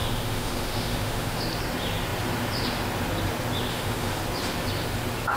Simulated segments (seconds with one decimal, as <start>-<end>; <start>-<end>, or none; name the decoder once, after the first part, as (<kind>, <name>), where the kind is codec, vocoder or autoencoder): 0.0-1.4 (autoencoder, DAC-VAE); 3.7-4.2